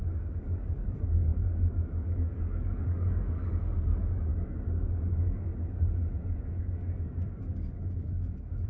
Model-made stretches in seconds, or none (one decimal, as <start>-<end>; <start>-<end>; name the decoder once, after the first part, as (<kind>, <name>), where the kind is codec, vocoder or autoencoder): 0.0-4.3 (codec, DAC); 5.1-5.5; 6.4-8.7